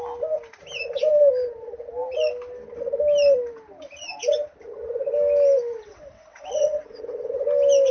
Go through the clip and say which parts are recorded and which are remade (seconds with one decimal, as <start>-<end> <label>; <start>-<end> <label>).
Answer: 0.0-5.8 recorded; 5.8-7.3 remade; 7.3-7.9 recorded